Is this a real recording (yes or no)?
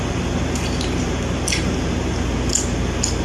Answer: yes